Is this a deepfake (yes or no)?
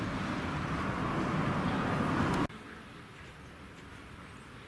no